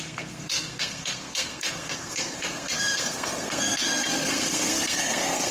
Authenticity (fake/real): fake